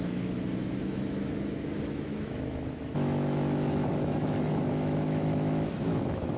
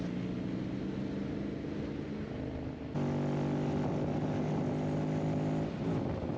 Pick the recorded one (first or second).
second